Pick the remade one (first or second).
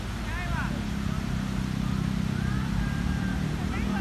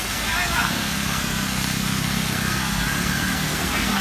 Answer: second